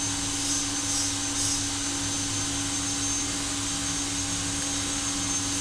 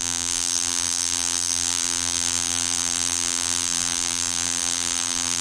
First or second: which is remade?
second